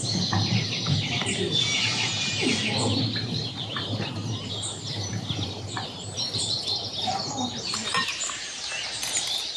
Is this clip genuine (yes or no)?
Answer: no